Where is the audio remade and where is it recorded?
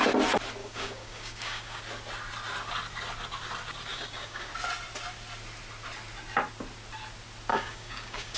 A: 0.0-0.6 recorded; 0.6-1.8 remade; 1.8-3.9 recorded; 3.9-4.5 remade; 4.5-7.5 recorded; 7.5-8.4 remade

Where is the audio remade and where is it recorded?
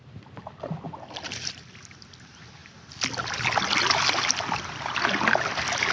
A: 0.0-5.9 recorded